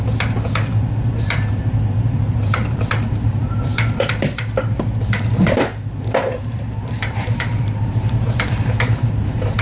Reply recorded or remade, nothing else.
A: remade